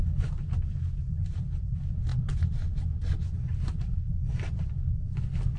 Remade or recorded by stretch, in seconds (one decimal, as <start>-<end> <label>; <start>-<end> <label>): 0.0-5.6 recorded